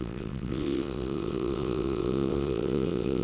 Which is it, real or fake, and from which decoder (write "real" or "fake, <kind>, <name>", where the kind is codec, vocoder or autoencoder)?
fake, vocoder, WaveNeXt